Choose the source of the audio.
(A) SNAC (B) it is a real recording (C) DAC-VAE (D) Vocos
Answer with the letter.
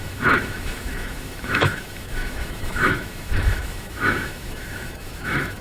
C